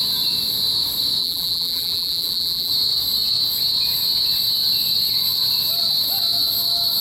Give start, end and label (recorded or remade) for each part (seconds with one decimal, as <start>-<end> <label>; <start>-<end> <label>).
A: 0.0-1.2 recorded; 1.2-2.7 remade; 2.7-7.0 recorded